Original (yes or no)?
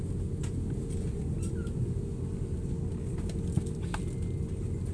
yes